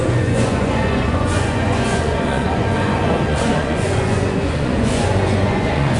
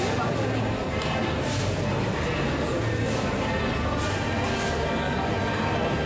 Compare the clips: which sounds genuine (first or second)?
second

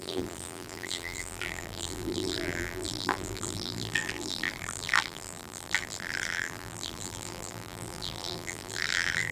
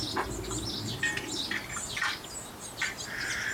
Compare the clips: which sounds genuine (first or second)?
second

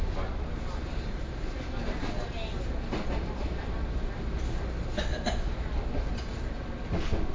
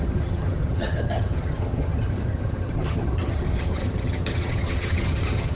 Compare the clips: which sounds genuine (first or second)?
first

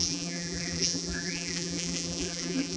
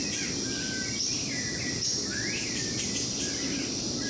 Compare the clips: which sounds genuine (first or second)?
second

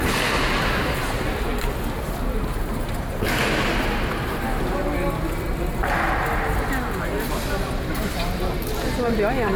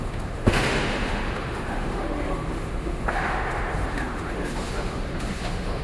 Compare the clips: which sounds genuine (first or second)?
first